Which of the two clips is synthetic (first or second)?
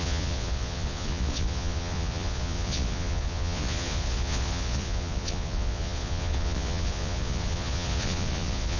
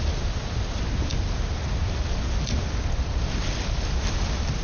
first